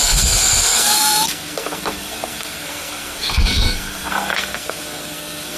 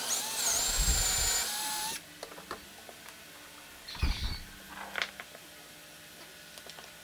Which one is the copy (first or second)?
first